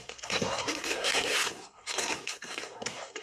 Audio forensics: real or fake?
fake